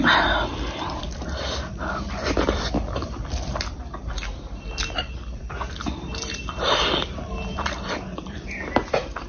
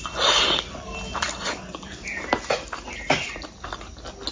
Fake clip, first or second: first